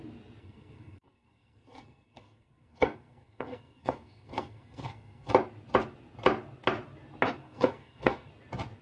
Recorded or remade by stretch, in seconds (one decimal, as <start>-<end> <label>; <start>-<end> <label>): 0.0-0.4 recorded; 0.4-5.3 remade; 5.3-7.4 recorded; 7.4-8.3 remade; 8.3-8.8 recorded